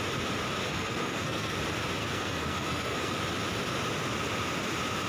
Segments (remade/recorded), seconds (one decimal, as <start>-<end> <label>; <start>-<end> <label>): 0.0-0.7 recorded; 0.7-1.6 remade; 1.6-2.0 recorded; 2.0-3.2 remade; 3.2-5.1 recorded